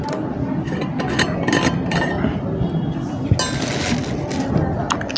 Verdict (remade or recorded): recorded